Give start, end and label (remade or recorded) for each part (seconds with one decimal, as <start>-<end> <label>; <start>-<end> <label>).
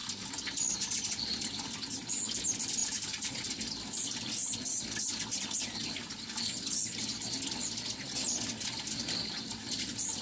0.0-2.8 recorded; 2.8-3.5 remade; 3.5-10.2 recorded